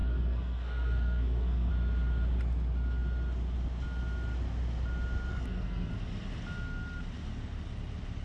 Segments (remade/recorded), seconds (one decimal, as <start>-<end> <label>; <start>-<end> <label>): 0.0-1.7 remade; 1.7-5.3 recorded; 5.3-5.9 remade; 5.9-8.2 recorded

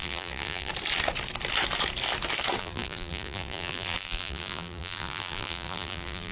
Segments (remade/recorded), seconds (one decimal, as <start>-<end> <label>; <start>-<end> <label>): 0.0-0.7 remade; 0.7-2.6 recorded; 2.6-6.3 remade